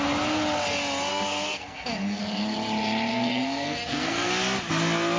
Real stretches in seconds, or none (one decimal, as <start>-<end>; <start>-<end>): 0.0-1.1; 2.2-3.1; 4.3-5.2

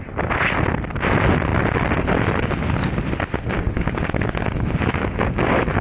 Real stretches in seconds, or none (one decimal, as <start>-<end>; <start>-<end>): 0.0-3.4

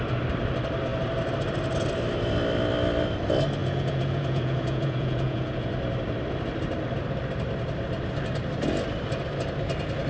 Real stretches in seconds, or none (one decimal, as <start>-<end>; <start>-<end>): 0.0-3.6; 5.7-10.1

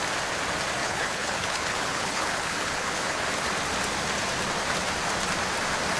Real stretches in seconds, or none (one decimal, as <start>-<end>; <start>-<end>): 0.0-0.8; 3.2-6.0

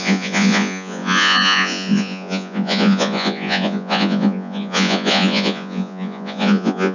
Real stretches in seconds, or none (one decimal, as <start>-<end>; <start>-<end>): none

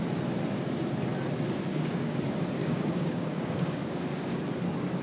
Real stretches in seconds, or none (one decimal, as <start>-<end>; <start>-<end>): 0.0-1.7; 2.2-2.6; 4.4-5.0